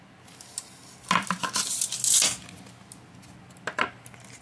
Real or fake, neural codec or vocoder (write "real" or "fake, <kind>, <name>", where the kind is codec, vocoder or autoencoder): real